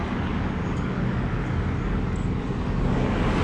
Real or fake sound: fake